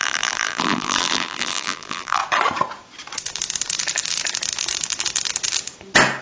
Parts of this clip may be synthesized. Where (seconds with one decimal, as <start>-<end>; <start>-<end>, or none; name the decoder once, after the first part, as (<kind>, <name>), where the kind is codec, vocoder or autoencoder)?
0.0-2.2 (vocoder, BigVGAN v2)